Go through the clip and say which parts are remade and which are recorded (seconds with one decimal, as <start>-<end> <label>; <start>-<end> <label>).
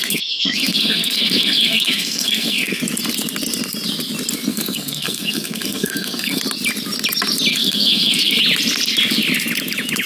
0.0-2.8 remade; 2.8-4.5 recorded; 4.5-6.4 remade; 6.4-7.5 recorded; 7.5-8.4 remade; 8.4-10.1 recorded